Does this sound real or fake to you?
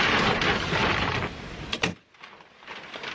real